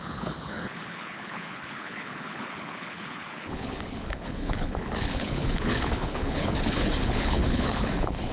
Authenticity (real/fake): fake